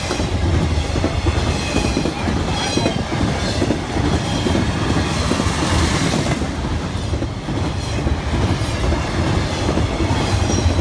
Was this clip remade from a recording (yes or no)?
no